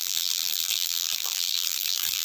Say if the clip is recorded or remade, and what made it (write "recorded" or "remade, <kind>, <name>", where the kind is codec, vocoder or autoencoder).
remade, vocoder, BigVGAN v2